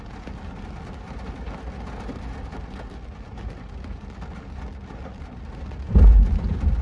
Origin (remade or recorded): recorded